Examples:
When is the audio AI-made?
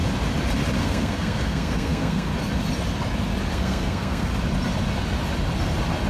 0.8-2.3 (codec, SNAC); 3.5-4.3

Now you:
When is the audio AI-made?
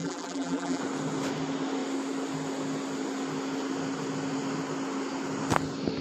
0.0-0.8 (vocoder, BigVGAN v2)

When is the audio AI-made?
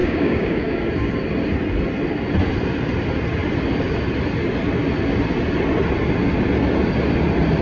0.0-0.9 (codec, DAC)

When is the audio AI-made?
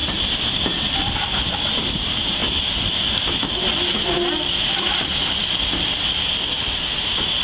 none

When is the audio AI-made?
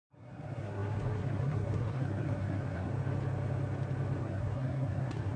0.0-2.9 (codec, SNAC); 4.2-5.4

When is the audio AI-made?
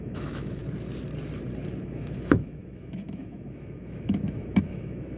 0.0-0.6 (autoencoder, DAC-VAE); 1.8-5.2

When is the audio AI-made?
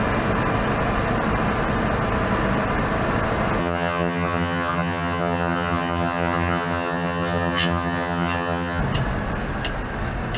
3.6-8.8 (vocoder, HiFi-GAN)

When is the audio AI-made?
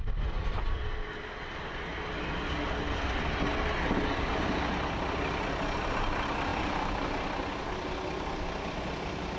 none